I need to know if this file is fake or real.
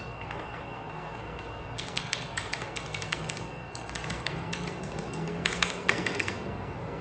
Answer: fake